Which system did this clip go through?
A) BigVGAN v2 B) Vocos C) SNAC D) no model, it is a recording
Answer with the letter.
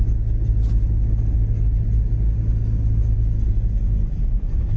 D